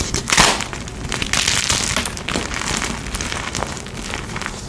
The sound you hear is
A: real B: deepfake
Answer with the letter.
A